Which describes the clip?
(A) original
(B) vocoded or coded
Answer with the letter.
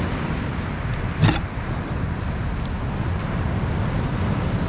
A